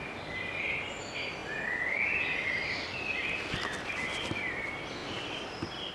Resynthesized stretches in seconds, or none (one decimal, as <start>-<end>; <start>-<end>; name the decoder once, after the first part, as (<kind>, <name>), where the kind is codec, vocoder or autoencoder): 1.4-2.7 (vocoder, BigVGAN v2); 5.0-5.9